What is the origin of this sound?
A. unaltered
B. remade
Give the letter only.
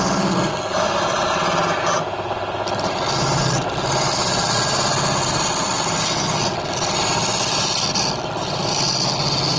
A